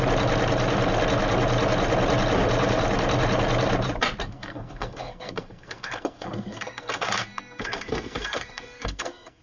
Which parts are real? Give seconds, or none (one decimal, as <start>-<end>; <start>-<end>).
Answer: 0.0-4.2